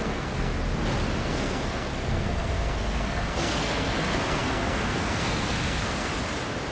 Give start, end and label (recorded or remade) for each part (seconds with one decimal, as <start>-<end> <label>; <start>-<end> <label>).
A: 0.0-0.5 remade; 0.5-1.2 recorded; 1.2-6.1 remade; 6.1-6.7 recorded